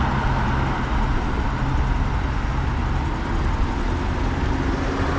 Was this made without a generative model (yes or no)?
yes